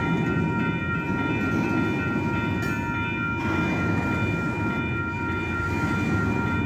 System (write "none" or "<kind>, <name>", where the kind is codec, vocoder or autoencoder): none